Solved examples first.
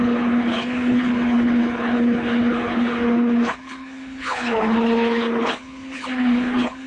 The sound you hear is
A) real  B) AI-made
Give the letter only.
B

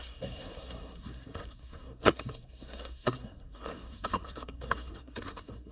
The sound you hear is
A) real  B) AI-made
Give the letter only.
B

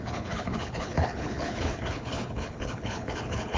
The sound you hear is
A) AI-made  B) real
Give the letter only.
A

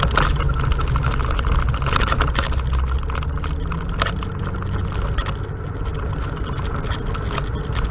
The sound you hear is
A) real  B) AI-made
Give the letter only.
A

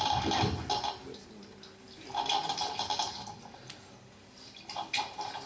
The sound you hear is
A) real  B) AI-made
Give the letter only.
A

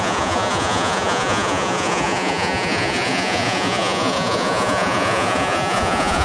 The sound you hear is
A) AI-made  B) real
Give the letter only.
A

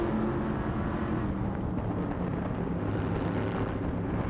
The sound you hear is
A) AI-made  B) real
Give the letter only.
B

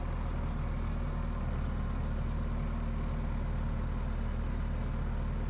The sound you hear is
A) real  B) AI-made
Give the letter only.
A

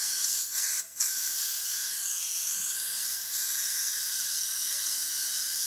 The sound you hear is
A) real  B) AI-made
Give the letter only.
B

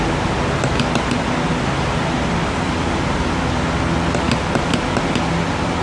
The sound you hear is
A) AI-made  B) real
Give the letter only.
B